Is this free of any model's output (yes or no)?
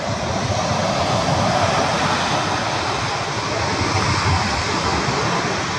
no